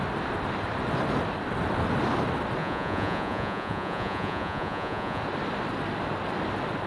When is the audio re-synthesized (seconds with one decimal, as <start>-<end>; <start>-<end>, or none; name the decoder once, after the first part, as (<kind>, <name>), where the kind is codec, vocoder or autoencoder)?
2.6-5.2 (vocoder, Vocos)